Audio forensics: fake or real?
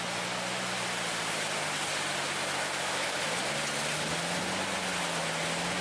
real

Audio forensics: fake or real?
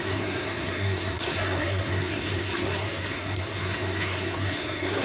fake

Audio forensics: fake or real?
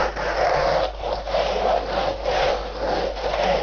real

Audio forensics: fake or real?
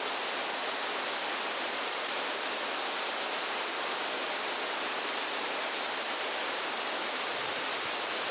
real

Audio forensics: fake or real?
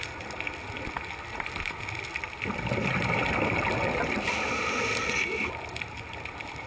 real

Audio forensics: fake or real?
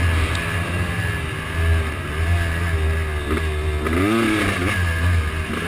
real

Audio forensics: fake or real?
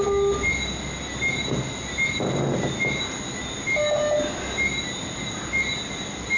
real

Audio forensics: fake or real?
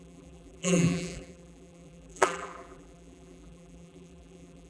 fake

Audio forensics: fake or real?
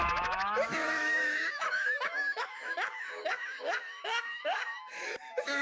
fake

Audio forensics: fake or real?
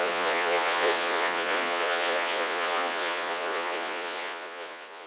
fake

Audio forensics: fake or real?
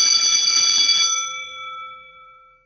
fake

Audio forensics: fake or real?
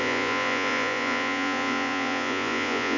fake